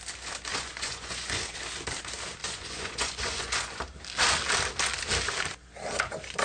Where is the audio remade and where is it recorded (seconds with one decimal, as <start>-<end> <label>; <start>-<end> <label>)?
0.0-0.5 recorded; 0.5-1.5 remade; 1.5-2.4 recorded; 2.4-3.8 remade; 3.8-6.4 recorded